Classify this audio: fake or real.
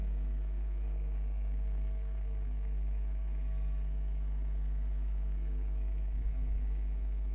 fake